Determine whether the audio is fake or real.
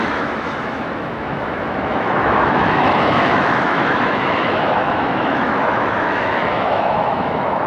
fake